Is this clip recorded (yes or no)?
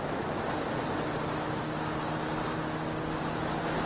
yes